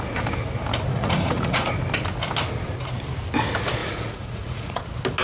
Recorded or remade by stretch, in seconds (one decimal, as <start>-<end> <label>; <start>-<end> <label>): 0.0-0.9 recorded; 0.9-1.7 remade; 1.7-3.8 recorded; 3.8-4.8 remade; 4.8-5.2 recorded